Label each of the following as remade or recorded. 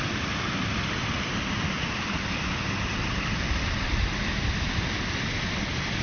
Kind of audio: recorded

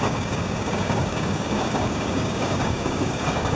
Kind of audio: remade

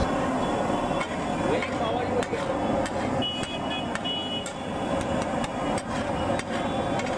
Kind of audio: recorded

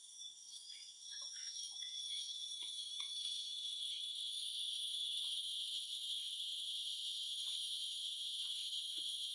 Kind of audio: remade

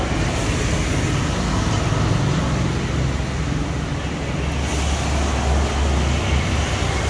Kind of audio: recorded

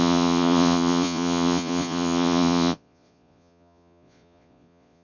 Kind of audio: remade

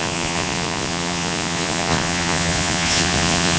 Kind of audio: remade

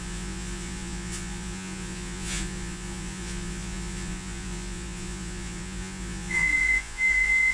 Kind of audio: remade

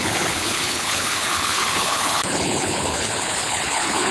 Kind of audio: remade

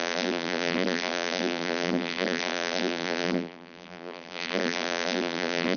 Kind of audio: remade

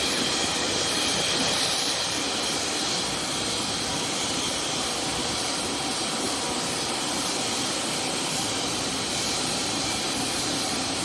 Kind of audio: remade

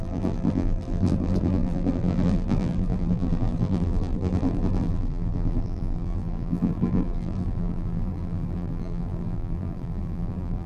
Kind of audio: remade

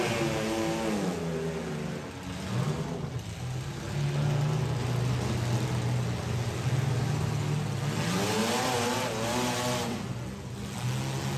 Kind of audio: recorded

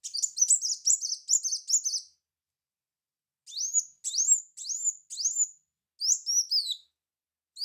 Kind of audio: recorded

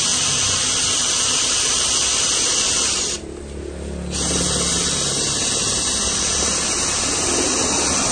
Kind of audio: recorded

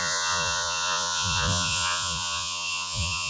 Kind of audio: remade